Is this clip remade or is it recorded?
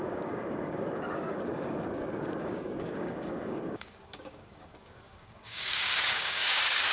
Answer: remade